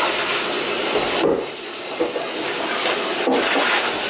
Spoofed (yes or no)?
no